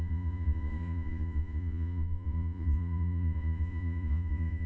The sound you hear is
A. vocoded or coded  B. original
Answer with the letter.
A